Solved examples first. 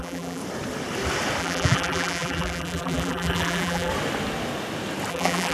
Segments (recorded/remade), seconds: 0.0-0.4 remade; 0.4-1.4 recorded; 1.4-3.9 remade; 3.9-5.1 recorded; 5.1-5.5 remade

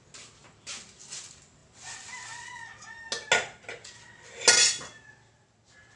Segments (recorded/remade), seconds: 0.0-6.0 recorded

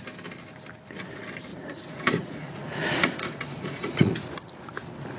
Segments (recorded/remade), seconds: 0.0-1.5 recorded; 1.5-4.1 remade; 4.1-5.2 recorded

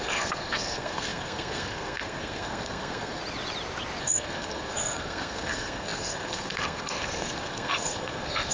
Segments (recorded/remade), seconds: 0.0-3.2 remade; 3.2-4.0 recorded; 4.0-8.5 remade

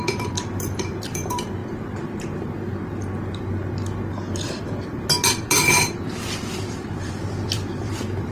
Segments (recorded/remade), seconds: 0.0-1.6 remade; 1.6-5.5 recorded; 5.5-8.3 remade